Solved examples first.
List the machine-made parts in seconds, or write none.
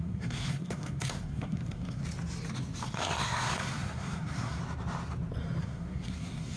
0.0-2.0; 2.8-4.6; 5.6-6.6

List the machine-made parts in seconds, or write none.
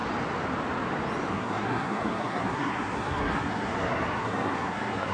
1.3-5.1